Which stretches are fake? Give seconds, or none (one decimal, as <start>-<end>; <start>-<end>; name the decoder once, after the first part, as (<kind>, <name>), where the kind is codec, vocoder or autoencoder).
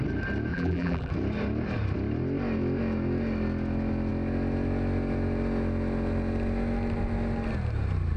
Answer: 0.5-1.1 (vocoder, BigVGAN v2)